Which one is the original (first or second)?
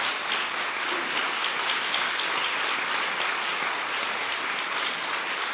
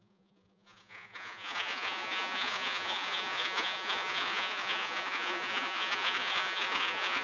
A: first